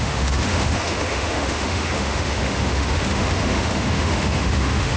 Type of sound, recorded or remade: remade